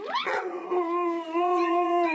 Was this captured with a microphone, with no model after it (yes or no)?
no